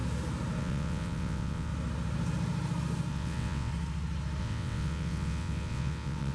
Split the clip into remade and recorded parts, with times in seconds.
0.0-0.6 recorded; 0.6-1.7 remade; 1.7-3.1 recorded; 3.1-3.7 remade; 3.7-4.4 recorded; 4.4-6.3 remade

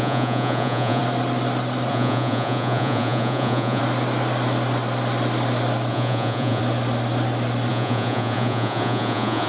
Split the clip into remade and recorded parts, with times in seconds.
0.0-1.0 remade; 1.0-1.9 recorded; 1.9-3.8 remade; 3.8-5.9 recorded; 5.9-6.6 remade; 6.6-7.7 recorded; 7.7-9.5 remade

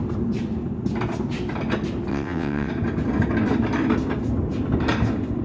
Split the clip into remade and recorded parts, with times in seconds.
0.0-2.1 recorded; 2.1-2.7 remade; 2.7-5.4 recorded

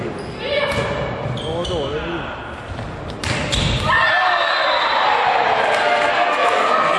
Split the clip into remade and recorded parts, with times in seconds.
0.0-5.8 recorded; 5.8-7.0 remade

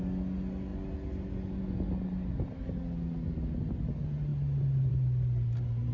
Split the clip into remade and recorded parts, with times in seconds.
0.0-5.9 recorded

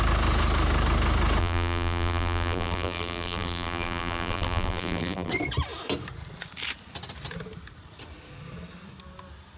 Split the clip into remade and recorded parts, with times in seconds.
0.0-1.4 recorded; 1.4-5.3 remade; 5.3-9.6 recorded

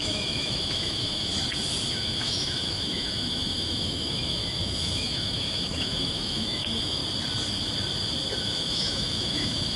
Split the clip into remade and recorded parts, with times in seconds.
0.0-1.3 remade; 1.3-1.9 recorded; 1.9-7.0 remade; 7.0-8.4 recorded; 8.4-9.8 remade